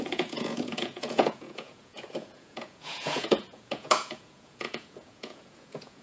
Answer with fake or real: fake